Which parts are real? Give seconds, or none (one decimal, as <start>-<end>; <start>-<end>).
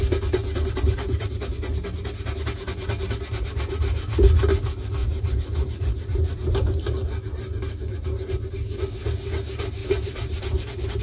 0.0-5.0; 8.3-9.8